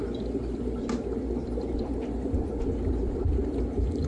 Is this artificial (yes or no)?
no